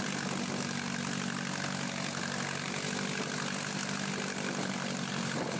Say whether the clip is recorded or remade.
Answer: recorded